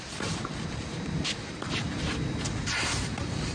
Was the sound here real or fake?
fake